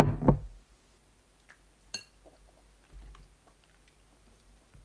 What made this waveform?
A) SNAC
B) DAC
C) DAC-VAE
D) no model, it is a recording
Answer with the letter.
D